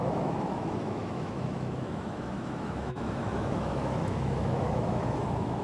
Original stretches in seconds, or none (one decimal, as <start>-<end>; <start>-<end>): none